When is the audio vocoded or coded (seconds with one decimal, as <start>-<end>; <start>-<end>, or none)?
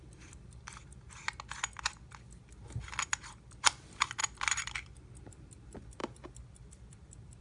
0.0-1.2; 2.1-7.4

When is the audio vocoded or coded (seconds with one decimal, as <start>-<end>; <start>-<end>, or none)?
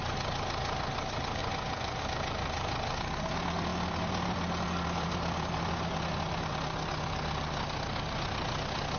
1.4-2.0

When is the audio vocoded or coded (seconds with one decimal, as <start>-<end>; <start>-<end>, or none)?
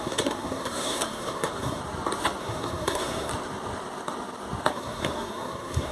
0.0-1.8; 2.4-3.3; 4.7-5.9